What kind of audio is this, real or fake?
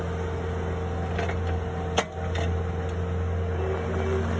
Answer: real